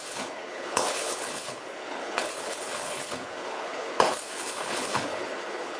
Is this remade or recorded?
remade